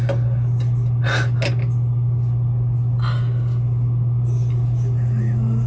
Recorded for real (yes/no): yes